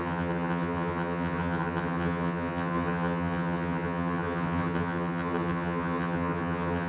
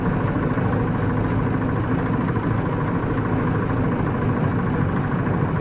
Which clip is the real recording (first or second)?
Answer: second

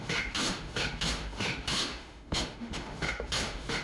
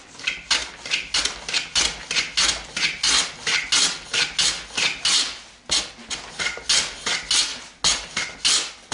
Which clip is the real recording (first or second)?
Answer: second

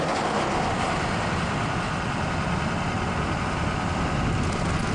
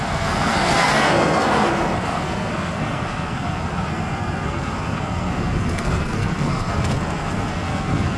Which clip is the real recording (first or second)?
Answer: first